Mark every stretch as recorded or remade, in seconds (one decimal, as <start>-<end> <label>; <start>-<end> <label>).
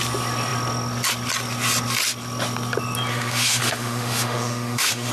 0.0-3.1 recorded; 3.1-5.1 remade